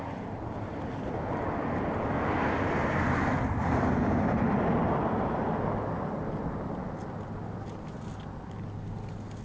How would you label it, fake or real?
real